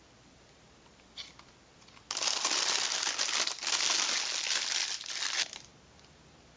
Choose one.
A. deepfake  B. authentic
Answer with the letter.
B